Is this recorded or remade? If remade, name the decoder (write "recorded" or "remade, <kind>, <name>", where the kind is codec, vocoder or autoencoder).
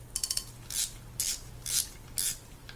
recorded